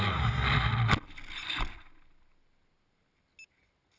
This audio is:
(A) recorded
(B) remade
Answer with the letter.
A